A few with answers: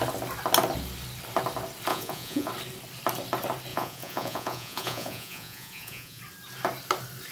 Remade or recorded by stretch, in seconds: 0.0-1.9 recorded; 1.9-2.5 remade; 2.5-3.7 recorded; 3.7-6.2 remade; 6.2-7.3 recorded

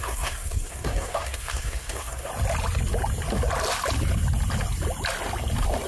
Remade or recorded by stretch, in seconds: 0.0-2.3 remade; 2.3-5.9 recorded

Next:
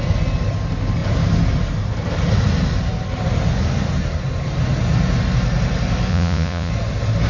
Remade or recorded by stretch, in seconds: 0.0-6.1 recorded; 6.1-6.7 remade; 6.7-7.3 recorded

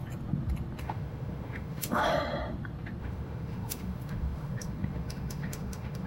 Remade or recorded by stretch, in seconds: 0.0-0.8 recorded; 0.8-2.1 remade; 2.1-3.0 recorded; 3.0-6.1 remade

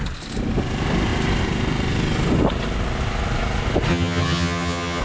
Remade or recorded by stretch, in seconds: 0.0-3.9 recorded; 3.9-5.0 remade